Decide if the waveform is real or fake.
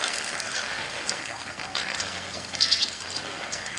fake